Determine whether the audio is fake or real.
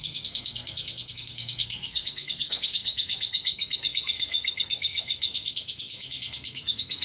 fake